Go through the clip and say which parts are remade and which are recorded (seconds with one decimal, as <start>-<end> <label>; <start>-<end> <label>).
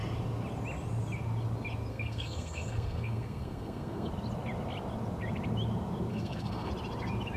0.0-1.9 recorded; 1.9-4.1 remade; 4.1-6.1 recorded; 6.1-6.7 remade; 6.7-7.4 recorded